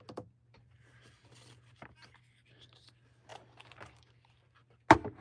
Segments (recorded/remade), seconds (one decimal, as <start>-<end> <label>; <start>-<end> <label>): 0.0-5.2 recorded